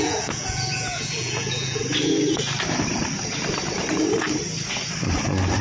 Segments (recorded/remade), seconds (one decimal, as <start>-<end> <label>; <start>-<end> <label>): 0.0-1.8 remade; 1.8-5.6 recorded